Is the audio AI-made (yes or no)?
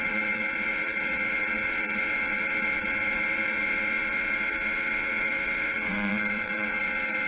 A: yes